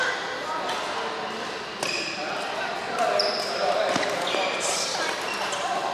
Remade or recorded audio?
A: recorded